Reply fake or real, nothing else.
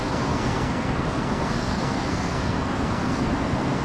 fake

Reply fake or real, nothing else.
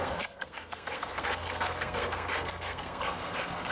fake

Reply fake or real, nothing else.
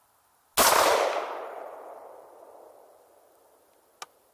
real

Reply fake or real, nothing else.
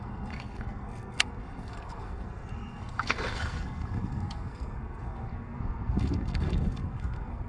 fake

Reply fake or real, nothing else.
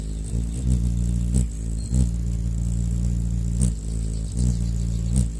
real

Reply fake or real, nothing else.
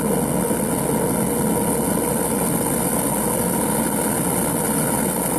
real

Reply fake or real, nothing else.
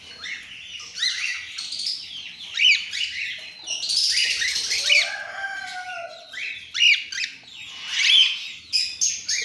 real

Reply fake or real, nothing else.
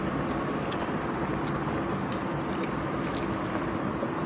real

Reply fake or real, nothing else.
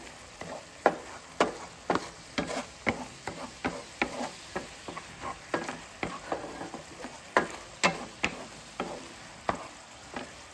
real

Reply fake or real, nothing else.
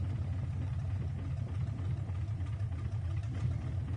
real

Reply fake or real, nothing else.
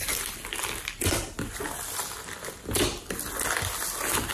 real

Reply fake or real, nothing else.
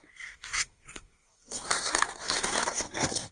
fake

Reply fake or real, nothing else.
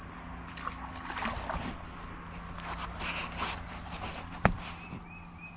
real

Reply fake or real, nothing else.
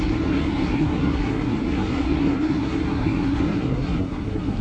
fake